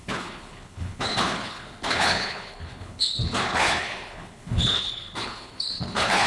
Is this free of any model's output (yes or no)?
no